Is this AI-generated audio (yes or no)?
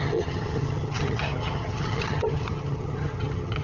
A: yes